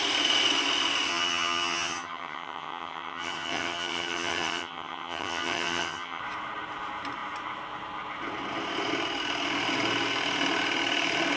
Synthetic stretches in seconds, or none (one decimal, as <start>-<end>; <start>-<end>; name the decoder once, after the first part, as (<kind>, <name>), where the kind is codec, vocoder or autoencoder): 1.1-6.2 (vocoder, HiFi-GAN)